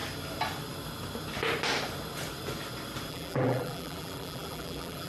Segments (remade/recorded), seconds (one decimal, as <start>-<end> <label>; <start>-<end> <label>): 0.0-3.1 recorded; 3.1-5.1 remade